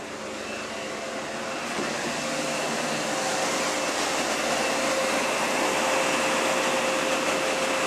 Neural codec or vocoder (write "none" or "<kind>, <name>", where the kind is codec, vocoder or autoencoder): none